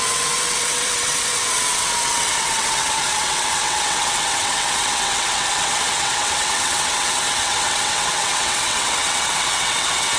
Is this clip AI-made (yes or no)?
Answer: yes